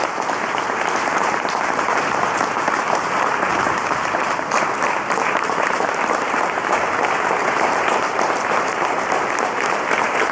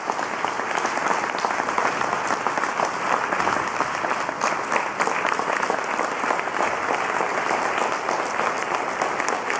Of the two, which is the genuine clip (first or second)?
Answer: second